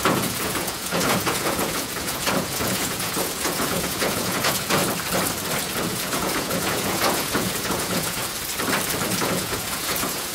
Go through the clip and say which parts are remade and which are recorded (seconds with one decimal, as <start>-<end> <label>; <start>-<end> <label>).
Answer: 0.0-4.8 remade; 4.8-5.9 recorded; 5.9-8.2 remade; 8.2-9.2 recorded; 9.2-10.3 remade